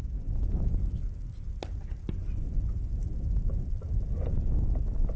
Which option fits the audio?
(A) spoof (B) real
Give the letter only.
B